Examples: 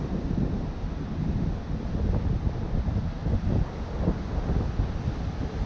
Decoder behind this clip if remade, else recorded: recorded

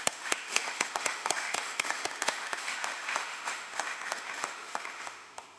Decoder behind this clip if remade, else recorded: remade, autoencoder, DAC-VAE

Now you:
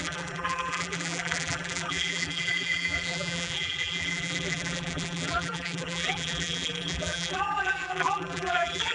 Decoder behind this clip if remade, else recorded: remade, vocoder, BigVGAN v2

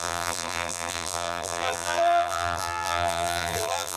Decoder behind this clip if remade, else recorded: remade, vocoder, BigVGAN v2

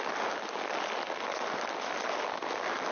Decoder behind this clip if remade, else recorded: recorded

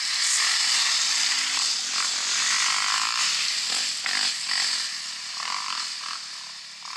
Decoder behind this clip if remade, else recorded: recorded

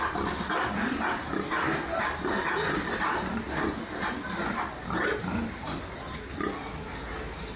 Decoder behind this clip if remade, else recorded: recorded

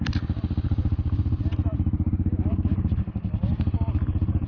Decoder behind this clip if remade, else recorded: recorded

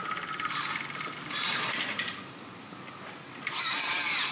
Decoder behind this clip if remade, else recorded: recorded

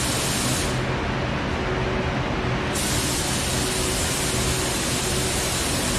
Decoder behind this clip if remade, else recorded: recorded